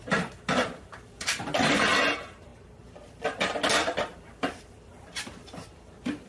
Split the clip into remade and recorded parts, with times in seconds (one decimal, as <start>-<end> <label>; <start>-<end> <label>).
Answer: 0.0-6.3 remade